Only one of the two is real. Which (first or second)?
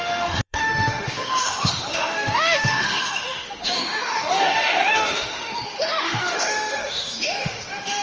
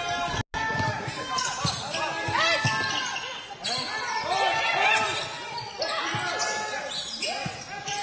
second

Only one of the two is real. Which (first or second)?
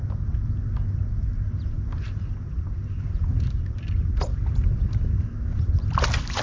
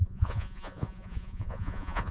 first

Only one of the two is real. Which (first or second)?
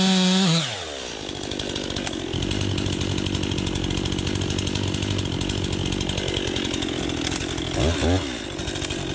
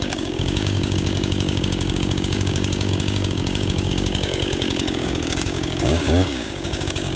first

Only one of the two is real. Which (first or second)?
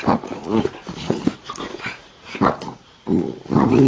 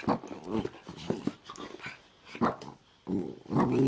second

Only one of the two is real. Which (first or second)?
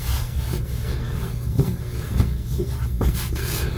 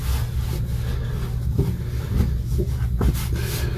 second